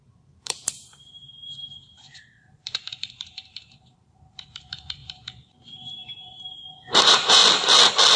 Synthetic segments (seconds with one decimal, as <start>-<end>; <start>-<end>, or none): 0.0-7.4